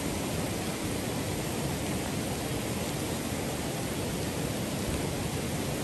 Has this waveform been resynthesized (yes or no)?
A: no